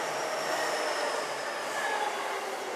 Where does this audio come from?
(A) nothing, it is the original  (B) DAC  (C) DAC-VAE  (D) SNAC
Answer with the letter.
A